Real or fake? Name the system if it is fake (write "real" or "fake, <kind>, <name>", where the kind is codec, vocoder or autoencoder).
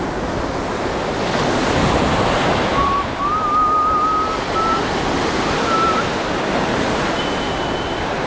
real